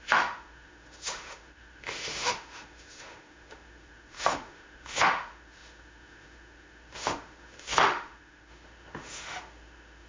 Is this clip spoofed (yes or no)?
yes